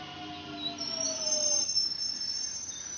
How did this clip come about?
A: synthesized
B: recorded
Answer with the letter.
B